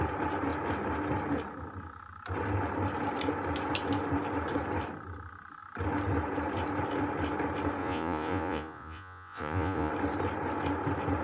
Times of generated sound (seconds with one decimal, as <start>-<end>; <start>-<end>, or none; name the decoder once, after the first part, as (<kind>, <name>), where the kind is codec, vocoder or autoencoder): 7.8-9.9 (vocoder, Vocos)